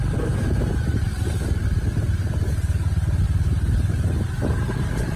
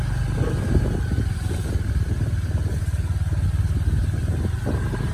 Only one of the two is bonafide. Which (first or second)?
second